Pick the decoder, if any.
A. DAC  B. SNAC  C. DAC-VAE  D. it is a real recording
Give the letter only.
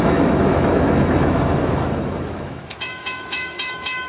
C